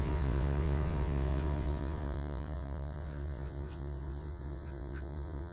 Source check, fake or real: fake